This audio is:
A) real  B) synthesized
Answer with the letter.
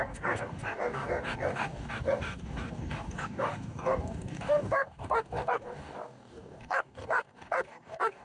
B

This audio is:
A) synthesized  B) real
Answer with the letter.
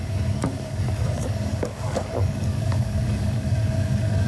A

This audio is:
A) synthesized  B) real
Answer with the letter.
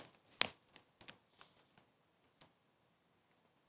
B